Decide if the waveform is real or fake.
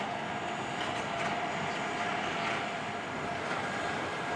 real